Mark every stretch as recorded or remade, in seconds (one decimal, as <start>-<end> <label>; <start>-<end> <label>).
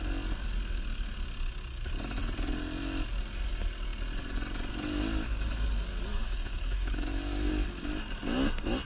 0.0-6.1 recorded; 6.1-7.5 remade; 7.5-8.8 recorded